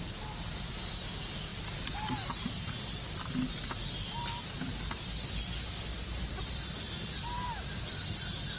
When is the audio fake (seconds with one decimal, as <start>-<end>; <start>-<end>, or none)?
1.5-6.4; 7.0-8.2